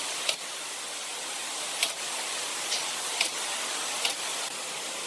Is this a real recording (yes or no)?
yes